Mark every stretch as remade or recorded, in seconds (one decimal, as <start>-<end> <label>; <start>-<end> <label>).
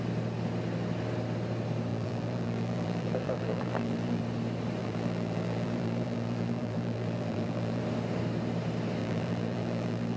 0.0-1.9 recorded; 1.9-4.2 remade; 4.2-4.8 recorded; 4.8-7.8 remade; 7.8-9.0 recorded; 9.0-10.2 remade